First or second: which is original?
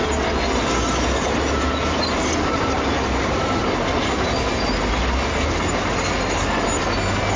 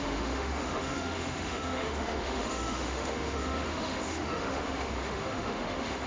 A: first